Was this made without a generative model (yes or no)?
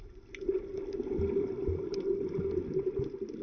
yes